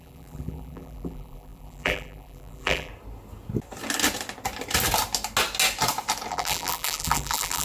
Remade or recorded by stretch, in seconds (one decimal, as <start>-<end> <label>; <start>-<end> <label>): 0.0-2.9 remade; 2.9-6.3 recorded; 6.3-7.6 remade

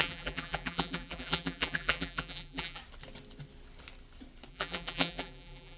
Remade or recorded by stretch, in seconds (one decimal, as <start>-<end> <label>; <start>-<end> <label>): 0.0-2.8 remade; 2.8-4.5 recorded; 4.5-5.8 remade

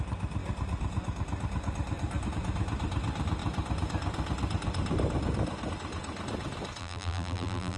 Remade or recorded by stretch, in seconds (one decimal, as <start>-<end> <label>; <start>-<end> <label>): 0.0-6.8 recorded; 6.8-7.8 remade